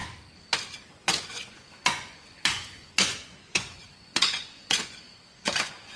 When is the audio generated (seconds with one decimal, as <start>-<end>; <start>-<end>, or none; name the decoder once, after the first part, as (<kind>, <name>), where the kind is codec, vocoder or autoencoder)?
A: 0.9-6.0 (vocoder, Vocos)